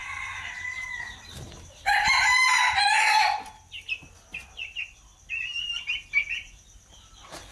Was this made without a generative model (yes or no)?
yes